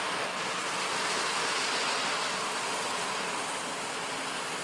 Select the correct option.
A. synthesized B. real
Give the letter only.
B